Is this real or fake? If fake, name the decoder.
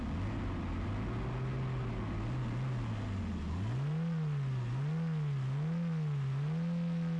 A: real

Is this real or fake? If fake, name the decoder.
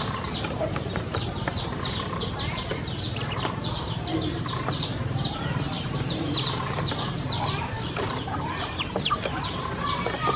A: fake, vocoder, BigVGAN v2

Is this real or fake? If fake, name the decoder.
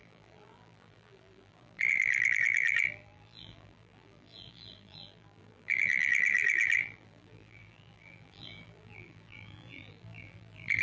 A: fake, vocoder, BigVGAN v2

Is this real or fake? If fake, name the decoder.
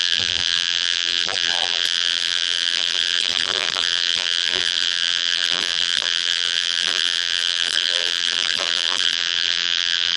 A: fake, vocoder, BigVGAN v2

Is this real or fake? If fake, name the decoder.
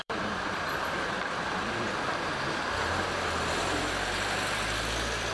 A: fake, vocoder, BigVGAN v2